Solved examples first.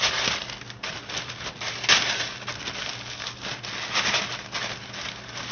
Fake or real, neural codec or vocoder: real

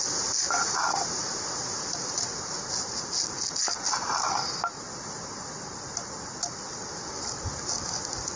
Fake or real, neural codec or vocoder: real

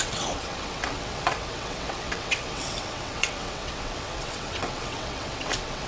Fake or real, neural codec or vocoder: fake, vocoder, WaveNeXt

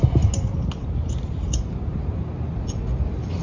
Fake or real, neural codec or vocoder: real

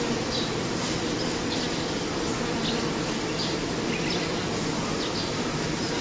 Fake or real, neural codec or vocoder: real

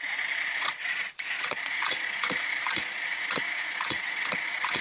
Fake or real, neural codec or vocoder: fake, vocoder, Vocos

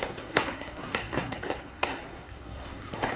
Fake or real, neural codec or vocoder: fake, codec, SNAC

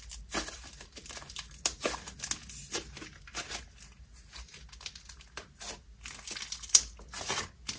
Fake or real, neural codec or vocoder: real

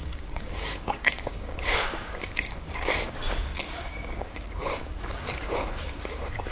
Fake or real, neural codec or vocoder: fake, codec, DAC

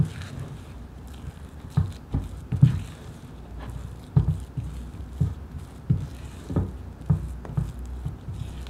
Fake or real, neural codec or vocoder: real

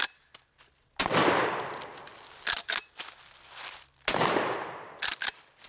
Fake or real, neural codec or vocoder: real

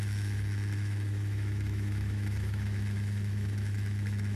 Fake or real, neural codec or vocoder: fake, autoencoder, DAC-VAE